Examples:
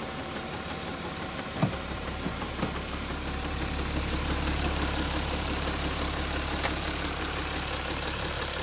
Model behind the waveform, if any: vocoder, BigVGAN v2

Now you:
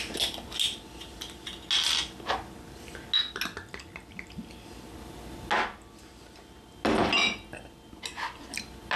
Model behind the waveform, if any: none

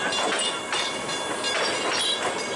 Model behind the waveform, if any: none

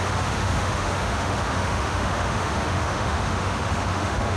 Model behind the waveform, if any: autoencoder, DAC-VAE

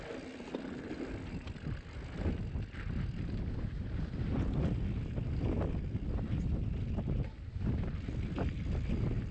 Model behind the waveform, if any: none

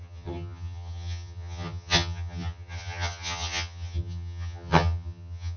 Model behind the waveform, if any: vocoder, HiFi-GAN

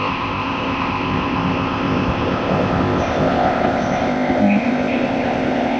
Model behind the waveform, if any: codec, ZipCodec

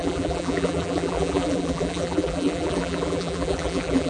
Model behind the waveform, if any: vocoder, BigVGAN v2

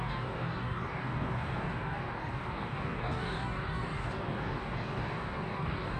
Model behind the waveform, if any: codec, DAC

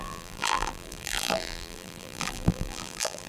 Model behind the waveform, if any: vocoder, BigVGAN v2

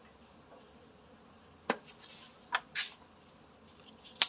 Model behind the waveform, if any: none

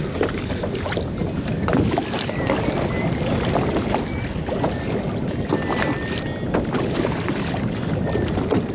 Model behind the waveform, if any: none